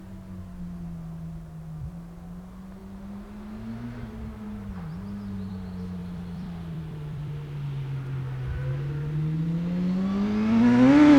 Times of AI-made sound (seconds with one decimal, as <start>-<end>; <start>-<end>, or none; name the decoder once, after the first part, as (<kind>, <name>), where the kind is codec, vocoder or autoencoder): 6.0-7.3 (vocoder, BigVGAN v2)